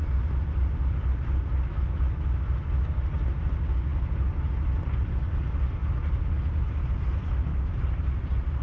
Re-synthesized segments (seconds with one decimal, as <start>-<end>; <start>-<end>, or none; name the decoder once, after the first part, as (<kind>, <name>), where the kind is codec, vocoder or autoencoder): none

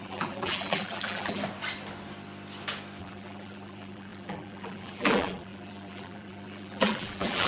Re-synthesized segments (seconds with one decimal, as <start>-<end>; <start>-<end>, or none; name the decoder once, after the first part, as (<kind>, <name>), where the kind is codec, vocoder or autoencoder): 0.0-1.4 (vocoder, BigVGAN v2); 3.0-7.5

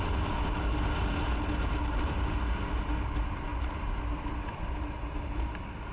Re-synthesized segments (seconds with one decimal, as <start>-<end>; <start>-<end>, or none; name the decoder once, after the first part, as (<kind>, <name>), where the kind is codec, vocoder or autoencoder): 3.5-4.7 (vocoder, BigVGAN v2)

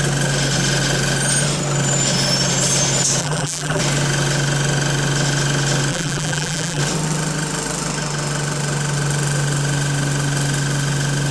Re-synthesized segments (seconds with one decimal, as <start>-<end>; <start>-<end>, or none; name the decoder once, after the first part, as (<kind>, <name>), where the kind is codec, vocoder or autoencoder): 3.2-3.8 (vocoder, BigVGAN v2); 5.9-6.8

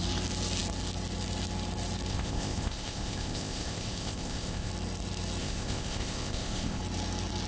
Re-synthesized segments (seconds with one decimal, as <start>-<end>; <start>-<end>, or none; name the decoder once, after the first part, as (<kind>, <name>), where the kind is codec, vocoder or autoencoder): 2.1-4.7 (codec, ZipCodec); 5.4-6.8